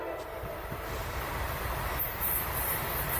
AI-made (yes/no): no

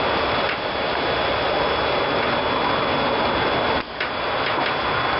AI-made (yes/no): no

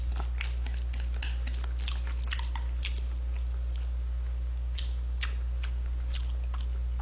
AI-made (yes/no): no